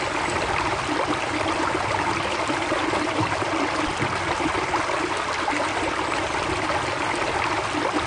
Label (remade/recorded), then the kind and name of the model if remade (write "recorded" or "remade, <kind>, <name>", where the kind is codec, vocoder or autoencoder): recorded